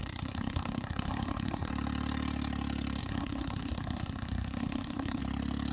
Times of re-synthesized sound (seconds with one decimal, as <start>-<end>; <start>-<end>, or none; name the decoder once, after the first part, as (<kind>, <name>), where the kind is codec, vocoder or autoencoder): 0.0-1.7 (codec, SNAC); 3.0-5.2